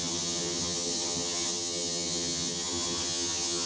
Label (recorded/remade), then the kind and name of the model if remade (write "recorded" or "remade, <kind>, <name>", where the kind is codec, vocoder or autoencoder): remade, vocoder, HiFi-GAN